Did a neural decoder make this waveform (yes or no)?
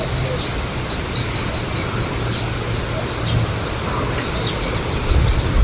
no